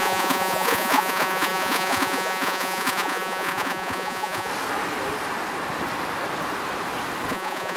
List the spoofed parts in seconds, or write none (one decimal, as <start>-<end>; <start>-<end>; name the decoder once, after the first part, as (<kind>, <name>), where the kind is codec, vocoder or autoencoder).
0.0-4.5 (vocoder, Vocos); 7.3-7.8